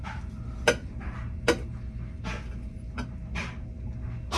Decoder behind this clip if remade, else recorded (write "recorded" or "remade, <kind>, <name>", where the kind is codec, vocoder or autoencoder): recorded